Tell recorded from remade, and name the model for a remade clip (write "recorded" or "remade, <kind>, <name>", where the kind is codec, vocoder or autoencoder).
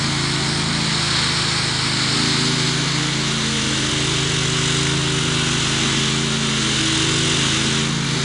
recorded